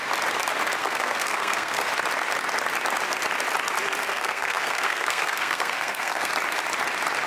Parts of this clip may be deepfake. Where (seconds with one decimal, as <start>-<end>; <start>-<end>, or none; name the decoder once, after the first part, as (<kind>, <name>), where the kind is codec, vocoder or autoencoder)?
0.8-1.8 (codec, SNAC); 4.0-6.3